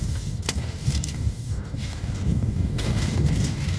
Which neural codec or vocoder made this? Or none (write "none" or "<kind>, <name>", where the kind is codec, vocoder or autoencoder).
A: codec, DAC